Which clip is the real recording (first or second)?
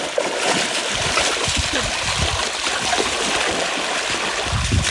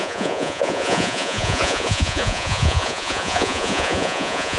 first